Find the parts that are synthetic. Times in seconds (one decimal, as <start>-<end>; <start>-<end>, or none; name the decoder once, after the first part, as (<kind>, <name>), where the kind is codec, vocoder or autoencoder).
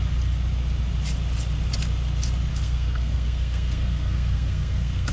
2.5-5.1 (codec, SNAC)